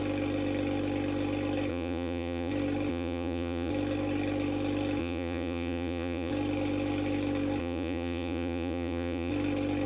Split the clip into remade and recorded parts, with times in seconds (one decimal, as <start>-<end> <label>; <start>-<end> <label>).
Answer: 0.0-1.7 recorded; 1.7-2.5 remade; 2.5-2.9 recorded; 2.9-3.7 remade; 3.7-5.0 recorded; 5.0-6.3 remade; 6.3-7.6 recorded; 7.6-9.3 remade; 9.3-9.9 recorded